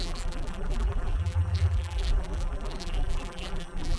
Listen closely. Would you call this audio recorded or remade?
remade